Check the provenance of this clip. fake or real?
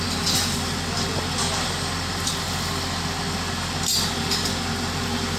real